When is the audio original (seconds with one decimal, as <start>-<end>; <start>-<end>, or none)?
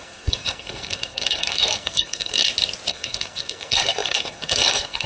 2.4-2.9